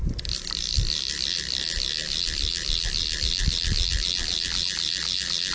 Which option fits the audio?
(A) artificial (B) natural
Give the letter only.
B